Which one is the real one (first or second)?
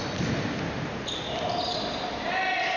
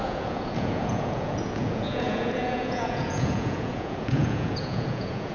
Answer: first